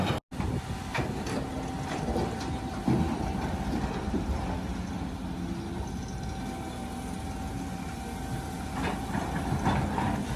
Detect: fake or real real